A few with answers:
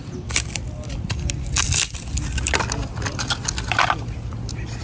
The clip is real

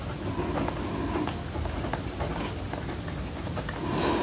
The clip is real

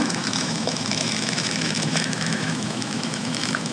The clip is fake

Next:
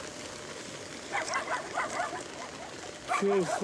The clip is fake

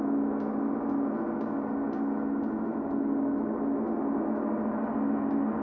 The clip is real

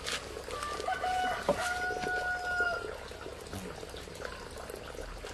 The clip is real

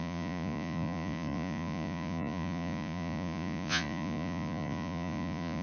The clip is fake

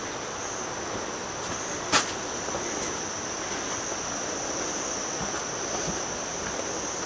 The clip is real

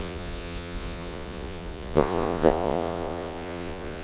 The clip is fake